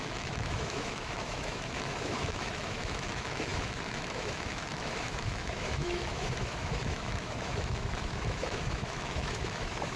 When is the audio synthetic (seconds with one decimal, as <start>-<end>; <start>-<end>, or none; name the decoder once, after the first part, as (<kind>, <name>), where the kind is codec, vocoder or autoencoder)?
0.0-10.0 (autoencoder, DAC-VAE)